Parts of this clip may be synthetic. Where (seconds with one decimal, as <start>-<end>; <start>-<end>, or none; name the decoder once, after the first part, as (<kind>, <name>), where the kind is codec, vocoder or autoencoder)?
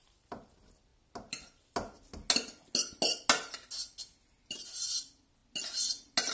none